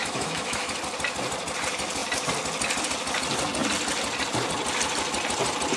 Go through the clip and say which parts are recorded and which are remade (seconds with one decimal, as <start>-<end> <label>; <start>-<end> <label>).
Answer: 0.0-0.7 remade; 0.7-5.8 recorded